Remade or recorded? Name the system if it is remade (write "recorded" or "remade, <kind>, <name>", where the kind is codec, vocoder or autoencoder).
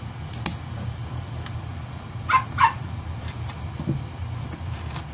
recorded